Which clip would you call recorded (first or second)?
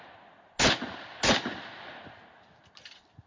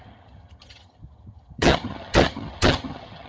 first